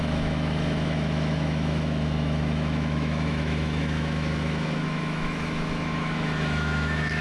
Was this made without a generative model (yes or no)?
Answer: no